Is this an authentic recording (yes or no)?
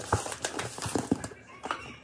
yes